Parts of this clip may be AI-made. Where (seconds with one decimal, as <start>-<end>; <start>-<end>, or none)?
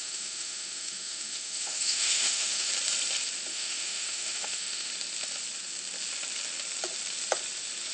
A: 0.0-2.7; 3.5-4.9